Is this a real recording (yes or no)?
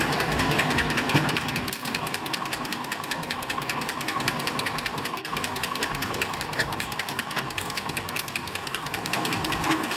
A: no